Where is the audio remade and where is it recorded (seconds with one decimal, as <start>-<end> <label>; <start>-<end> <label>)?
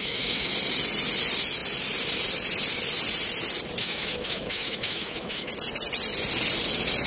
0.0-0.5 remade; 0.5-3.8 recorded; 3.8-5.5 remade; 5.5-7.1 recorded